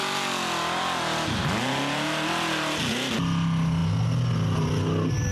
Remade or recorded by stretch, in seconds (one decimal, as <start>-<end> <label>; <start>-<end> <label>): 0.0-5.3 recorded